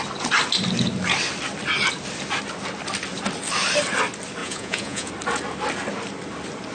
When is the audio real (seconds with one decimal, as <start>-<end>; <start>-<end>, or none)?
0.0-4.4; 5.1-6.7

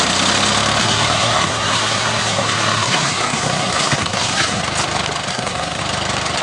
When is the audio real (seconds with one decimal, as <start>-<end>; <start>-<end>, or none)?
0.0-0.8; 4.6-5.3; 5.8-6.4

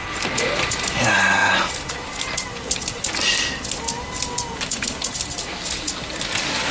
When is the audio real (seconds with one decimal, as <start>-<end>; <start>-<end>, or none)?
0.0-6.7

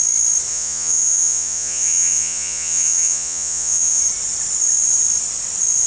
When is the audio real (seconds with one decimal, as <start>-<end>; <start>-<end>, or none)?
0.0-0.5; 4.0-5.9

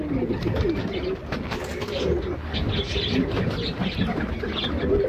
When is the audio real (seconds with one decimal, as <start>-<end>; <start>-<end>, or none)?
0.0-5.1

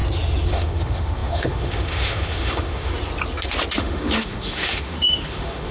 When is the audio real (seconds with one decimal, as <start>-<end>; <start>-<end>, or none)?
0.0-0.5; 2.9-3.8